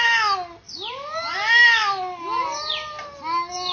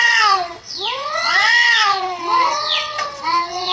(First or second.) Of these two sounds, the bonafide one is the first